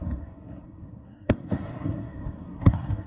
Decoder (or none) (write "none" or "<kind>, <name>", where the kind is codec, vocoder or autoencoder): codec, SNAC